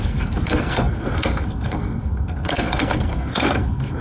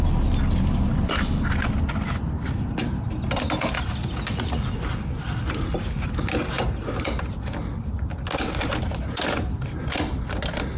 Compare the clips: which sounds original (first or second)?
second